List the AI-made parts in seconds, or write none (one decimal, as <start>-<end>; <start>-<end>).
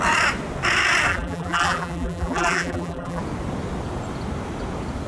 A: 1.1-3.2